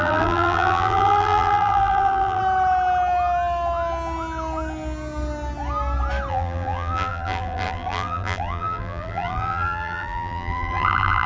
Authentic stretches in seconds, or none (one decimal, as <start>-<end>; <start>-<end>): 2.4-6.3